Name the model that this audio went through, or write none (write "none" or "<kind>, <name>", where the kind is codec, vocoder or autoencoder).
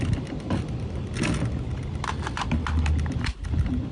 none